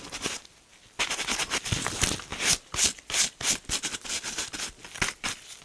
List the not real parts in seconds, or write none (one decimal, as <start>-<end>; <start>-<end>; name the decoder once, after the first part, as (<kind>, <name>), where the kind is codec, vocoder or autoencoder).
none